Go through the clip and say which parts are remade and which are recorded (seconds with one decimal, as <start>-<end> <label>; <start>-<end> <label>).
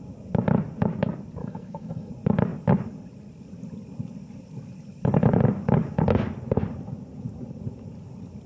0.0-1.4 recorded; 1.4-2.1 remade; 2.1-8.5 recorded